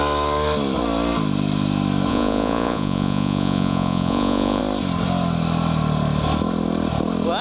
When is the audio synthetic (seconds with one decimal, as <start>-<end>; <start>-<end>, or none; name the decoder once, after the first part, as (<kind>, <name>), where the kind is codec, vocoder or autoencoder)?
2.1-4.6 (vocoder, Vocos)